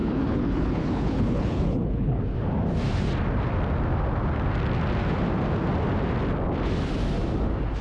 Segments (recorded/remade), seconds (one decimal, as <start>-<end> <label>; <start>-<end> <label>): 0.0-2.2 remade; 2.2-7.8 recorded